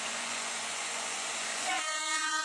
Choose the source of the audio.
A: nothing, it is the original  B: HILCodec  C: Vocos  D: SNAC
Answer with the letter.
C